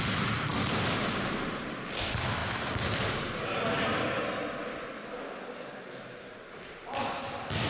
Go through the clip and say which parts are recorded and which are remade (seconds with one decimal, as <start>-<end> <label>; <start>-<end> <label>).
0.0-7.7 recorded